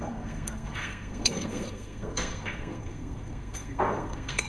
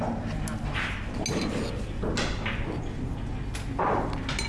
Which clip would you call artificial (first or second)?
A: first